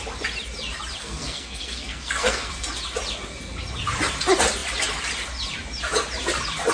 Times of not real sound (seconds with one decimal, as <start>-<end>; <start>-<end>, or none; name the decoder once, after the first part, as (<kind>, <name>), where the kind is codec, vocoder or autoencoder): 1.0-2.5 (codec, SNAC)